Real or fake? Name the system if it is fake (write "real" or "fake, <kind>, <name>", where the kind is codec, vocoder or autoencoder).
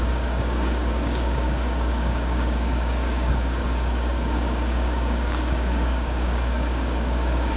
fake, codec, DAC